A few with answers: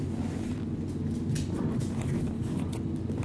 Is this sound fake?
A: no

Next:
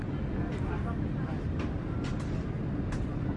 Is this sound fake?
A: no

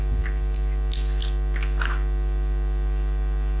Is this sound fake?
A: no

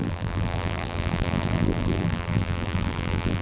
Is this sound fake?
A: yes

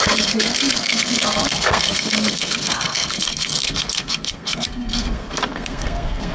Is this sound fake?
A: yes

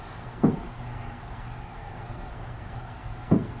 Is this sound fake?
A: yes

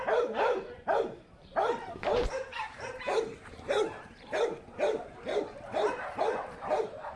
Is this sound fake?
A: yes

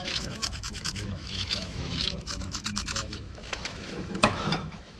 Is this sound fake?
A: yes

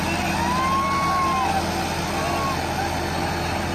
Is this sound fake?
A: no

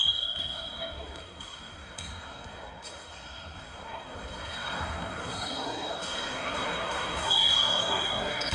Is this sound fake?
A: yes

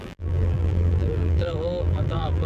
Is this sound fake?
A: yes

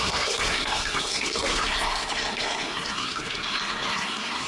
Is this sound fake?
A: yes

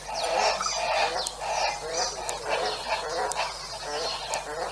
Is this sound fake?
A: no